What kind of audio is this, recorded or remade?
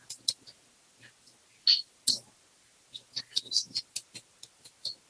recorded